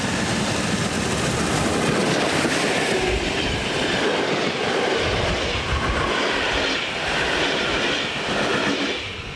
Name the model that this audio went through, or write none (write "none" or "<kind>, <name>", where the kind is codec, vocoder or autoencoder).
none